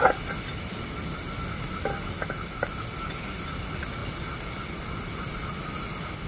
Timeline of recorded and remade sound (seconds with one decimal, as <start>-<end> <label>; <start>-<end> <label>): 0.0-6.3 recorded